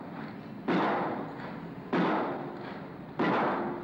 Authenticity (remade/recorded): recorded